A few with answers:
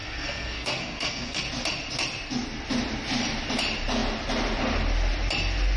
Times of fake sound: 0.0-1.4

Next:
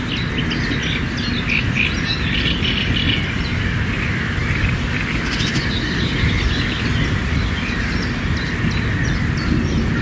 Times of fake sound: none

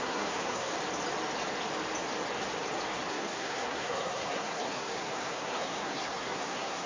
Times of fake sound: 0.0-0.7; 3.1-6.9

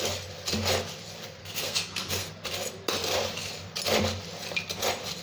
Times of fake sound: 1.4-2.3